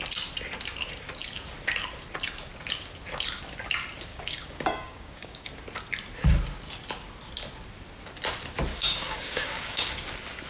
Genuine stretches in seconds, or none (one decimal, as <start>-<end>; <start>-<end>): 0.0-4.1; 5.5-8.7; 9.9-10.5